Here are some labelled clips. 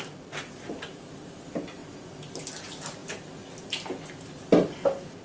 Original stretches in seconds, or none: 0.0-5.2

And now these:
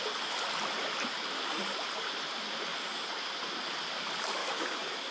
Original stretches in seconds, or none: 0.0-4.4

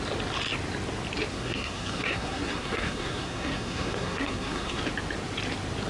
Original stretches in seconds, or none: 0.0-1.3; 4.8-5.9

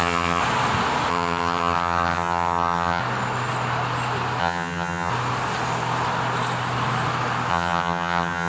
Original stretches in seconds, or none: 0.4-1.1; 3.0-4.4; 5.1-7.5

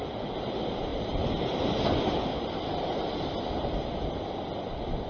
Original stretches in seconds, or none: 0.0-0.9; 4.0-5.1

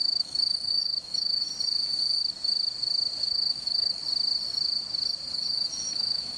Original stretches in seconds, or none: 1.5-3.3; 4.0-5.3

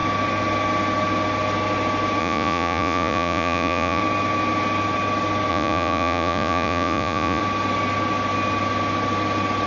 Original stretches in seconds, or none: 0.0-2.2; 4.0-5.5; 7.4-9.7

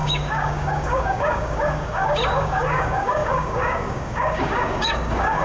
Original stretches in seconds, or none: none